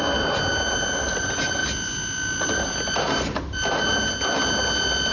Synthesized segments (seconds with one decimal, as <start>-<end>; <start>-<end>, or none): none